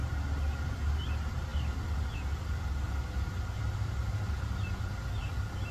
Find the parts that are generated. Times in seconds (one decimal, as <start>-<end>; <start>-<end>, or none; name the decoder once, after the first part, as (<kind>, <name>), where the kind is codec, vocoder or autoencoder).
none